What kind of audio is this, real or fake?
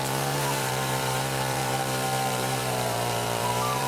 fake